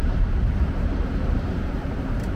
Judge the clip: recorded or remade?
remade